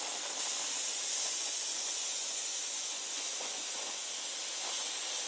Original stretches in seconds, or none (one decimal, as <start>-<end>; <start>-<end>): 0.0-0.9; 4.1-5.3